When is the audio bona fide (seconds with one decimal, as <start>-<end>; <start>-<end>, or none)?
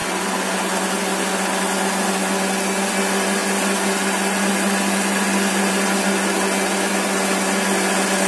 0.0-8.3